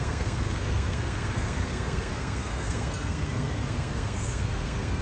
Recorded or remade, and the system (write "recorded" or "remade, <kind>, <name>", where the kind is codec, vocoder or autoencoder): remade, codec, SNAC